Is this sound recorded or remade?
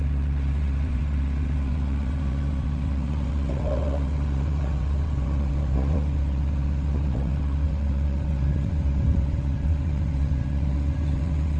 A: remade